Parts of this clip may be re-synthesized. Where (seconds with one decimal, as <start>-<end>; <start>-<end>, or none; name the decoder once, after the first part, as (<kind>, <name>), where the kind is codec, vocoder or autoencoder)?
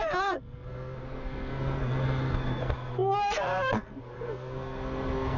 0.0-5.4 (codec, SNAC)